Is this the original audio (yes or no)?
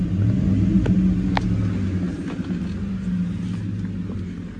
yes